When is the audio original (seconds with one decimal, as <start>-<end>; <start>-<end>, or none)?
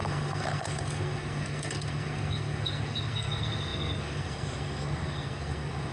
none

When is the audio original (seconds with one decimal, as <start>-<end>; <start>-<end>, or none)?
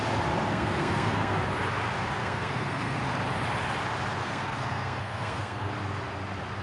0.0-0.5; 1.4-2.2; 3.0-4.2; 5.7-6.6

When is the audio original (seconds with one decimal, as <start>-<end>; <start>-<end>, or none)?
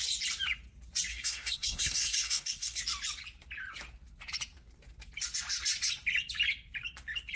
0.0-1.1; 2.8-7.4